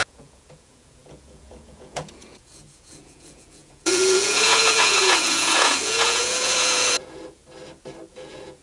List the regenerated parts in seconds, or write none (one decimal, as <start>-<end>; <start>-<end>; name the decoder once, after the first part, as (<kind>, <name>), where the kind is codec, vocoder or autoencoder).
0.0-7.4 (vocoder, Vocos); 8.1-8.6